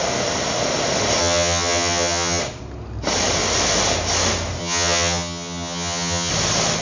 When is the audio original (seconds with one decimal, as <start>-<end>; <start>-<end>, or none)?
0.0-1.2; 2.4-4.6; 6.3-6.8